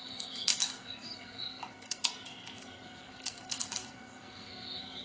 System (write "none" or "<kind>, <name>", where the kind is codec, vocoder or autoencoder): codec, SNAC